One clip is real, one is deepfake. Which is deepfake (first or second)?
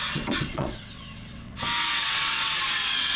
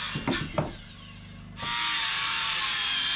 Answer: first